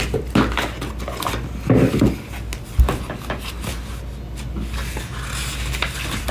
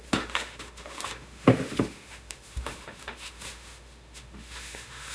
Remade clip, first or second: second